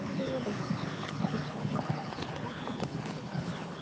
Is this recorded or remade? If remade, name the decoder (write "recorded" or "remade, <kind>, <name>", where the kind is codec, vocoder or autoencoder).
remade, codec, HILCodec